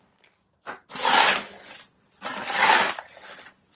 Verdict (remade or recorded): recorded